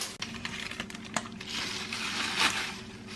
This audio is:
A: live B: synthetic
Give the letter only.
A